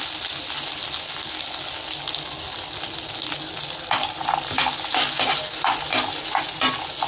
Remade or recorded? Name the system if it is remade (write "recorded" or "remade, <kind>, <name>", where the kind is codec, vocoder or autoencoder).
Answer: recorded